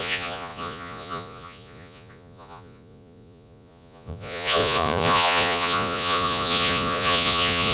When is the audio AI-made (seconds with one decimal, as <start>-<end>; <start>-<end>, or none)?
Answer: 0.0-7.7